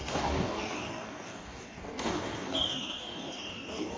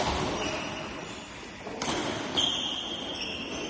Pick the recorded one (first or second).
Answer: second